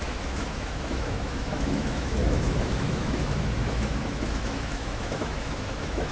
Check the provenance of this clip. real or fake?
fake